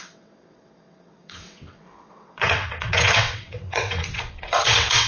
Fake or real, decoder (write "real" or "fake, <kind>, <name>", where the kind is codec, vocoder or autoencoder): fake, vocoder, WaveNeXt